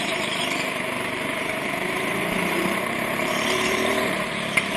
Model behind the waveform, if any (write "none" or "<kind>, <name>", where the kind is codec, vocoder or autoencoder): vocoder, BigVGAN v2